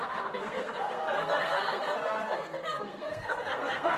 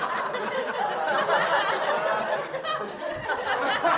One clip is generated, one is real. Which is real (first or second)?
second